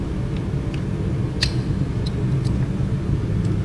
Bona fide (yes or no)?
yes